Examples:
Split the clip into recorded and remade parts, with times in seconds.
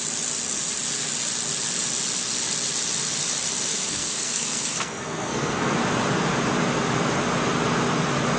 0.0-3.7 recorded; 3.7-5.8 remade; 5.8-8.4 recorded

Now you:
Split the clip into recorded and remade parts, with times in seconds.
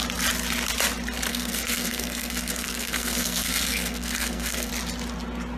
0.0-1.3 recorded; 1.3-4.7 remade; 4.7-5.6 recorded